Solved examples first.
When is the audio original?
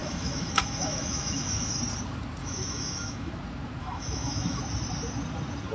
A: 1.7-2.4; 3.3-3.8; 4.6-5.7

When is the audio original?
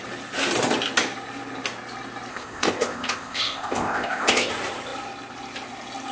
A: 0.0-2.3; 4.5-6.1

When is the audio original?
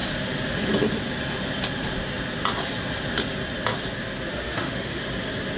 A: 0.0-4.3; 5.0-5.6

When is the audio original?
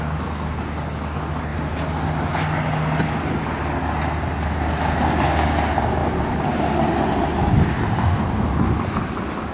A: 0.0-9.5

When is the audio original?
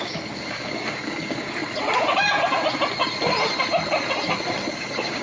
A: 1.6-4.7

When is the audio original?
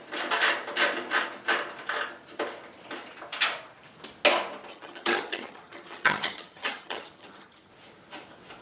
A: 0.0-4.7; 7.7-8.6